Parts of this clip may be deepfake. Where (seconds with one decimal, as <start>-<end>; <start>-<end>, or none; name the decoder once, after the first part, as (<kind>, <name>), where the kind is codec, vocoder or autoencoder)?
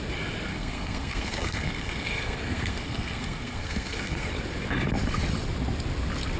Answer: 0.5-4.3 (codec, SNAC)